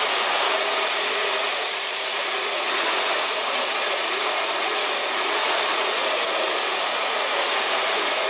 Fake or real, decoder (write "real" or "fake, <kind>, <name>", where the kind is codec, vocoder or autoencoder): fake, vocoder, Vocos